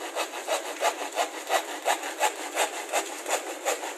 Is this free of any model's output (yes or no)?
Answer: yes